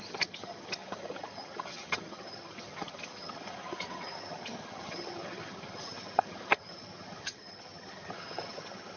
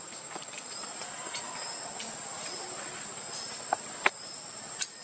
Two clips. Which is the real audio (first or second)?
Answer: second